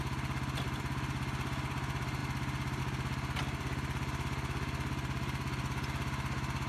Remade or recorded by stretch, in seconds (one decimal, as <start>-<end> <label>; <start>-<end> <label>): 0.0-6.7 recorded